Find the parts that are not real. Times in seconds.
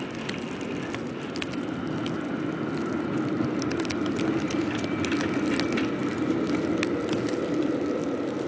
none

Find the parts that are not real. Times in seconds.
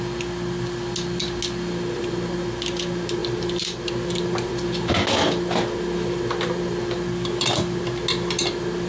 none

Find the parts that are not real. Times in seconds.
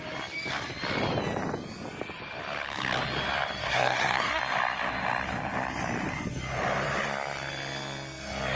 3.6-4.4 (codec, SNAC)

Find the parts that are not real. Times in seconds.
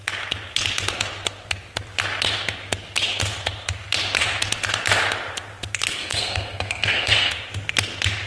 6.0-7.3 (codec, SNAC)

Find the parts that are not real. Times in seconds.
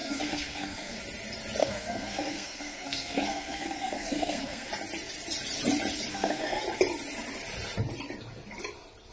0.0-1.0 (codec, SNAC); 1.6-4.7; 6.1-6.6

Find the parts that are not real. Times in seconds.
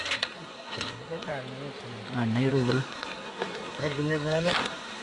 0.0-1.3 (codec, SNAC); 2.5-5.0